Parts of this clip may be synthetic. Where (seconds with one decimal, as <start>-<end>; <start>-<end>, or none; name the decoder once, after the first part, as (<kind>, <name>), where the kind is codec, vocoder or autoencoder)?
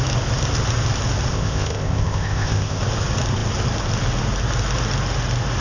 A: 1.3-2.8 (codec, ZipCodec)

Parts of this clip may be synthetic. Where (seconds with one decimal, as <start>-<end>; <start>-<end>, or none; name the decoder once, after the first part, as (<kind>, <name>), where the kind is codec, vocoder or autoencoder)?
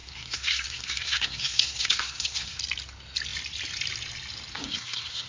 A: 0.0-2.6 (codec, SNAC); 4.5-5.3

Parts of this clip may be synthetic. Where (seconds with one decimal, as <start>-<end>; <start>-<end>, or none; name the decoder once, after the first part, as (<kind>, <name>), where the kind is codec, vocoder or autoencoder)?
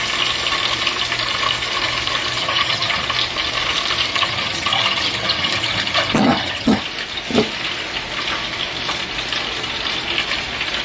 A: 2.4-3.0 (vocoder, HiFi-GAN); 4.1-6.8